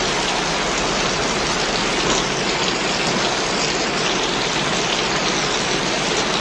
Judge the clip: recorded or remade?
recorded